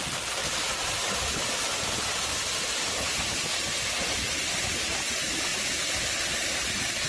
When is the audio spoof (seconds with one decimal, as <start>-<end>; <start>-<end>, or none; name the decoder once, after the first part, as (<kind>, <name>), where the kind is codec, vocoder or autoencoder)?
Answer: none